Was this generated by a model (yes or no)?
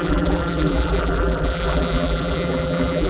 yes